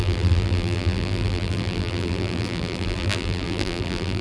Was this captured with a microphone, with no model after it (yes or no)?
no